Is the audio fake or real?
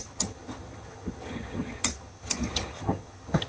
fake